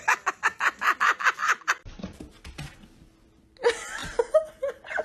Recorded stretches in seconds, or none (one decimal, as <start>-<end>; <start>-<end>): 0.0-1.4; 2.0-5.0